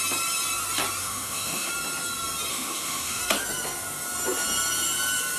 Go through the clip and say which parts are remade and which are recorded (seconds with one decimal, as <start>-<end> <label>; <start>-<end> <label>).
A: 0.0-1.0 recorded; 1.0-1.7 remade; 1.7-2.5 recorded; 2.5-3.2 remade; 3.2-5.4 recorded